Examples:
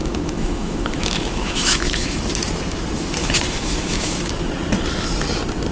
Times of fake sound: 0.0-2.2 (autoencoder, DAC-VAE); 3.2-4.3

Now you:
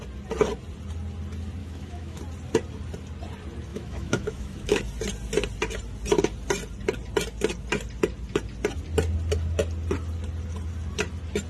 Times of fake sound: 1.6-2.2 (autoencoder, DAC-VAE); 3.7-4.8